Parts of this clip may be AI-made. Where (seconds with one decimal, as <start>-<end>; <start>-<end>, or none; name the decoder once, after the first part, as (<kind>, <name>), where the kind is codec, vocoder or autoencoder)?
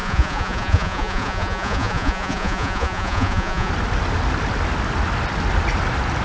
0.0-3.7 (vocoder, Vocos)